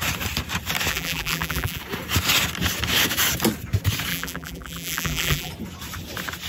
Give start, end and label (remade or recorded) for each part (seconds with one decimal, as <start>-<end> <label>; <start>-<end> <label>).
0.0-0.9 recorded; 0.9-1.8 remade; 1.8-4.1 recorded; 4.1-5.5 remade; 5.5-6.5 recorded